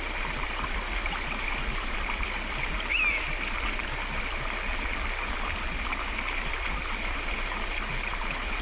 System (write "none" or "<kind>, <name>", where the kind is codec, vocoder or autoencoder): none